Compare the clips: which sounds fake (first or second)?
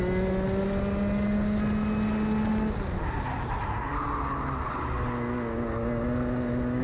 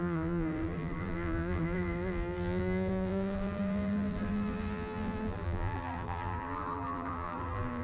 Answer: second